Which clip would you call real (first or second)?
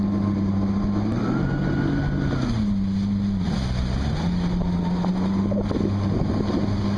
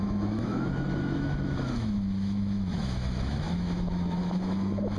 first